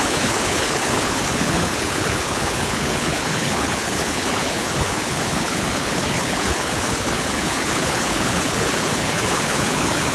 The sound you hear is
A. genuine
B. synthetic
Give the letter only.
B